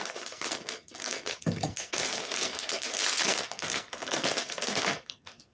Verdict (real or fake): fake